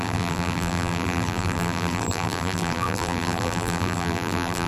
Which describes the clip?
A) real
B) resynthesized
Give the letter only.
B